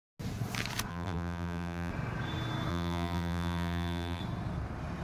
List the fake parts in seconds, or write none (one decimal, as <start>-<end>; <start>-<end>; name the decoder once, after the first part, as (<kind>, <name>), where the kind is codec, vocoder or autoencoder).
0.9-1.9 (vocoder, BigVGAN v2); 2.7-4.2